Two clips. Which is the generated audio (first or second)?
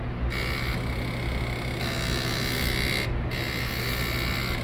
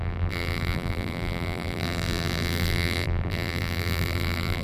second